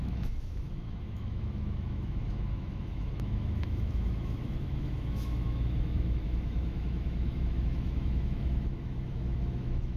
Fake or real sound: fake